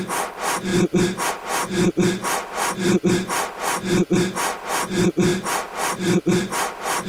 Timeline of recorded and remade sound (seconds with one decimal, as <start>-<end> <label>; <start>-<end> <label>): 0.0-2.2 recorded; 2.2-3.0 remade; 3.0-5.3 recorded; 5.3-7.1 remade